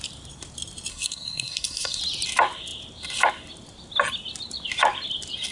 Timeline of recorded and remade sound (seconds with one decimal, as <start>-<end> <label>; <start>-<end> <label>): 0.0-0.9 recorded; 0.9-2.0 remade; 2.0-5.5 recorded